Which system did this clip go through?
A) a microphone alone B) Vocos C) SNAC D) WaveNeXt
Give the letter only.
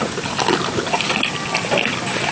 A